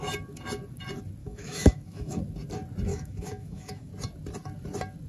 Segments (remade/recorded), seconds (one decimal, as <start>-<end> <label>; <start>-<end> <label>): 0.0-1.2 recorded; 1.2-2.2 remade; 2.2-2.9 recorded; 2.9-3.9 remade; 3.9-5.1 recorded